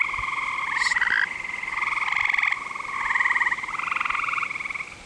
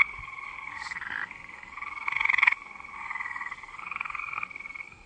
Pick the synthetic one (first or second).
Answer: second